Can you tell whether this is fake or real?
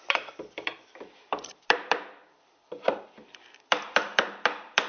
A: fake